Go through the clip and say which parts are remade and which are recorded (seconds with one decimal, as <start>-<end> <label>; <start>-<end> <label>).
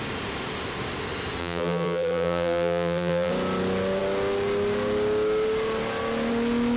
0.0-1.4 recorded; 1.4-3.3 remade; 3.3-6.8 recorded